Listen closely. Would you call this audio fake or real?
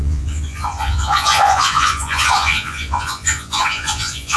fake